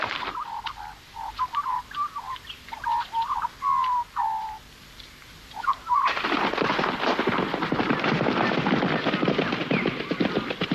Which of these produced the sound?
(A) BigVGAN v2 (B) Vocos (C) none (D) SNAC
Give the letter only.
A